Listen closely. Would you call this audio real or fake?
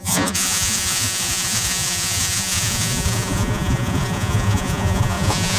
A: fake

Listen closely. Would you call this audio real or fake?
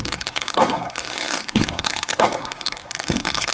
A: fake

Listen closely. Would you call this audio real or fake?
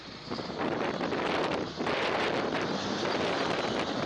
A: real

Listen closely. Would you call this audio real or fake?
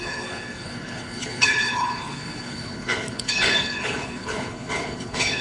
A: fake